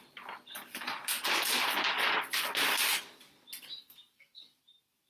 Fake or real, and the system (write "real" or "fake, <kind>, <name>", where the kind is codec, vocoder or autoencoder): real